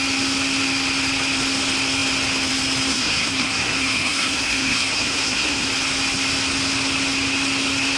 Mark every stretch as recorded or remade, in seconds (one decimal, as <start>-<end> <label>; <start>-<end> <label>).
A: 0.0-2.9 recorded; 2.9-5.7 remade; 5.7-8.0 recorded